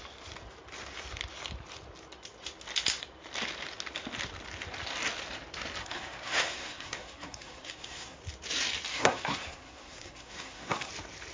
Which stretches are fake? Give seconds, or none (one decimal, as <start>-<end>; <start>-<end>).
5.8-8.2; 8.9-10.9